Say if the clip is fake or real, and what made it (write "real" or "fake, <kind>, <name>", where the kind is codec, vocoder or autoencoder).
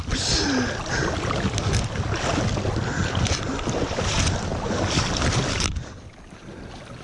real